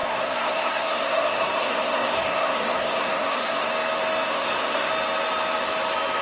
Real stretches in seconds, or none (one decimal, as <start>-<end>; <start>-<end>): 3.7-4.3; 4.9-6.2